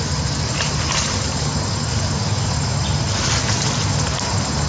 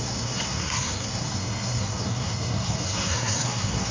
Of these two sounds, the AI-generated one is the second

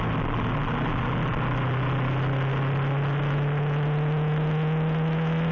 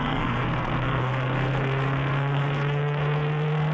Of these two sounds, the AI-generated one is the second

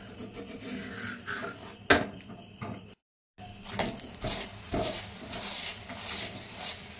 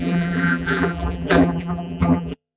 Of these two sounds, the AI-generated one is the second